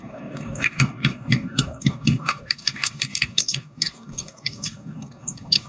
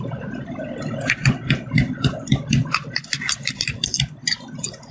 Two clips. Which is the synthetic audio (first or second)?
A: first